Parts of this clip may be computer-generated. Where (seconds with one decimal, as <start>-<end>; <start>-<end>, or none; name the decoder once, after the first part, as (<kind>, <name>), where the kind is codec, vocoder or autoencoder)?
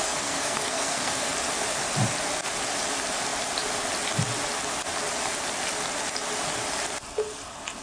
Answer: 0.0-1.3 (codec, SNAC)